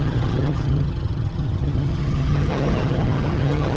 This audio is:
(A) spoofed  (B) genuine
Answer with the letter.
A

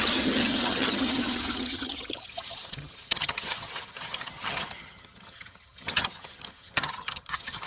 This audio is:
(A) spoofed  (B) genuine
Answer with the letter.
A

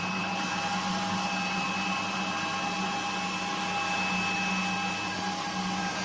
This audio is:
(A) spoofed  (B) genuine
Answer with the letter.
B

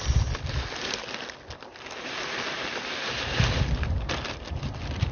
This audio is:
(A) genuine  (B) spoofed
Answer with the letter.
A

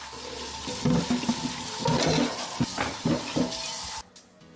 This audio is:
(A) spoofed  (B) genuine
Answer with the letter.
B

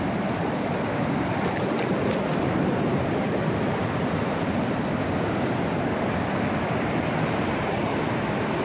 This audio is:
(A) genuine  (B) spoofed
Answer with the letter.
A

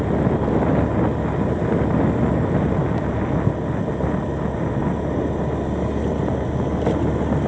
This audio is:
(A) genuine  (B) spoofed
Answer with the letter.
A